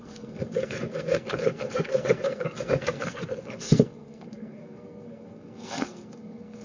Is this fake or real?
fake